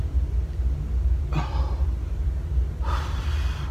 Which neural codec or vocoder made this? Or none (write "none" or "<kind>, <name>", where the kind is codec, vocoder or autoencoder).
none